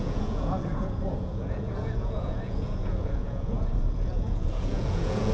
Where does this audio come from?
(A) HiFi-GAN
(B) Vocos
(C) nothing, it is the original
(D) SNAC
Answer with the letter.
B